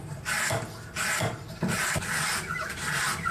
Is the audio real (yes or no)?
yes